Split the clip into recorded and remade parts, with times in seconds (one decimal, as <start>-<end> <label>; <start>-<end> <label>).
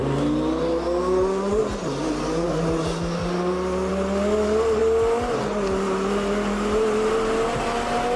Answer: 0.0-8.2 recorded